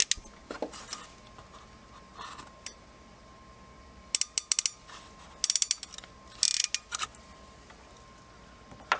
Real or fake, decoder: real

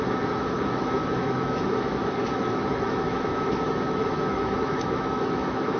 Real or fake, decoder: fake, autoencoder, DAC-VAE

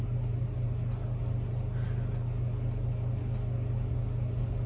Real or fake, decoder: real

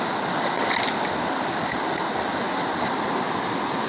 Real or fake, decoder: real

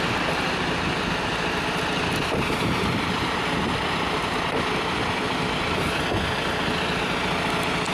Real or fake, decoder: real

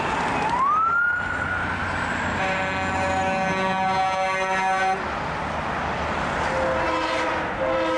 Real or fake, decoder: real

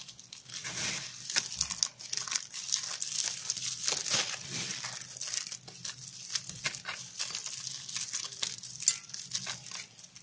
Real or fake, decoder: real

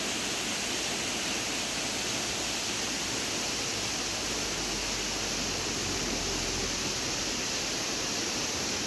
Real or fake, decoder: real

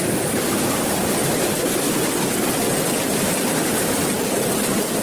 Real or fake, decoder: real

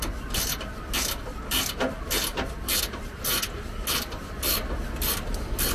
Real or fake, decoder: real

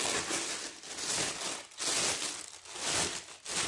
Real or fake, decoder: real